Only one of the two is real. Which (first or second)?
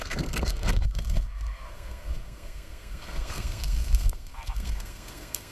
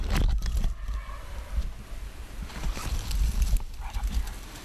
second